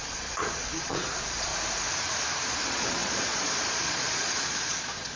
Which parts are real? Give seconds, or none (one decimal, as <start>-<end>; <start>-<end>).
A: 1.5-2.5

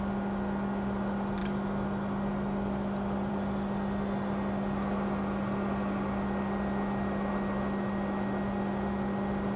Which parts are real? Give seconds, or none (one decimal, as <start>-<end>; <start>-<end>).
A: 0.0-9.6

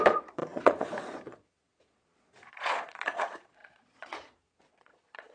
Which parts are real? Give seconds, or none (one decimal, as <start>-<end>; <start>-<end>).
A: none

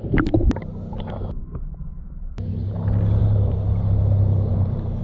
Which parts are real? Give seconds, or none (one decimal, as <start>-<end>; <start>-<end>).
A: 0.0-5.0

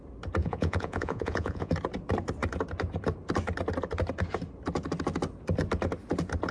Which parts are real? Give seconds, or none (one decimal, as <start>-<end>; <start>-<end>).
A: 0.0-0.4; 1.7-6.5